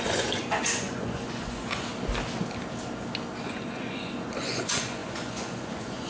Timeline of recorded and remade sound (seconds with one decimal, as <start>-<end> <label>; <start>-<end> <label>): 0.0-1.9 remade; 1.9-3.4 recorded; 3.4-6.1 remade